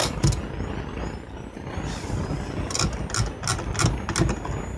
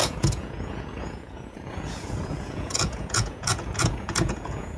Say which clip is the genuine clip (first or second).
first